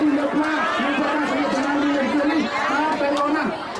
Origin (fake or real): real